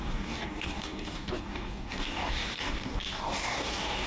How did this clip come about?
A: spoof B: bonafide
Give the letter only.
A